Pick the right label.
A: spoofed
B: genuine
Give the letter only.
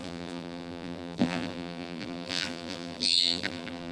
A